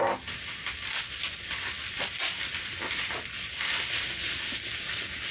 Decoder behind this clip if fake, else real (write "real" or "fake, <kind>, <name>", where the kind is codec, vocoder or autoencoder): real